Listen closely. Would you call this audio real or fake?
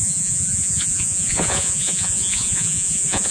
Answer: fake